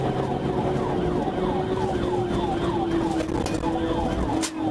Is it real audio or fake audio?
real